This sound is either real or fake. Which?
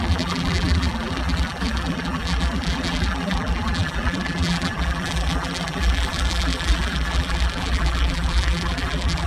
fake